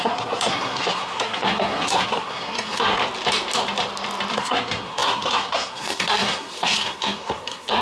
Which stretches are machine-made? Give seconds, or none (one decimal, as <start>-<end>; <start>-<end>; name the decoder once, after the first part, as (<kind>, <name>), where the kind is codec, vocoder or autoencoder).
0.0-3.0 (codec, SNAC); 4.3-7.8